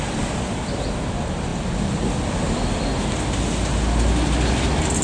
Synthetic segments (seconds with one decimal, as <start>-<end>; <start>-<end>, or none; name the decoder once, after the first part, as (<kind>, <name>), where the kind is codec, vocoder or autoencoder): none